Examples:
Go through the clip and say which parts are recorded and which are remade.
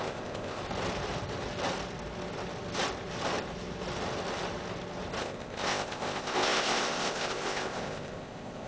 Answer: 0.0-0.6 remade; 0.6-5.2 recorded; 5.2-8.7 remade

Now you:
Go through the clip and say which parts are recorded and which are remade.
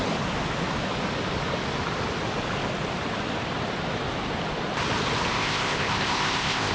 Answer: 0.0-5.3 recorded; 5.3-6.7 remade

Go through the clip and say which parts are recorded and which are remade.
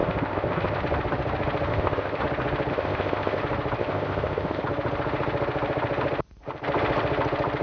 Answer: 0.0-0.8 remade; 0.8-1.7 recorded; 1.7-2.2 remade; 2.2-2.7 recorded; 2.7-3.4 remade; 3.4-3.8 recorded; 3.8-4.6 remade; 4.6-7.6 recorded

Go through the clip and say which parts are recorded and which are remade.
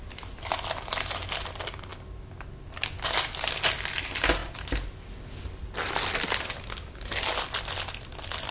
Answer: 0.0-8.5 recorded